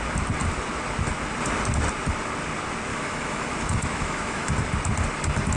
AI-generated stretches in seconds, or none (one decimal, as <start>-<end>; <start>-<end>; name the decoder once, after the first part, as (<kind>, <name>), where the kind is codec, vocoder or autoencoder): 2.9-4.5 (autoencoder, DAC-VAE)